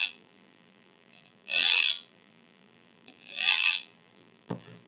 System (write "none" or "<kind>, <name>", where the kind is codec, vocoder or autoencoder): vocoder, BigVGAN v2